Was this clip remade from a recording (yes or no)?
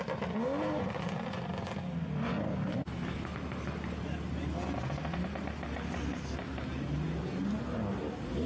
no